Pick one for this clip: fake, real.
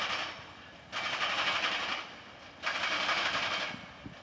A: real